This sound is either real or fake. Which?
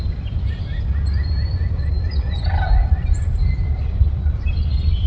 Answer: real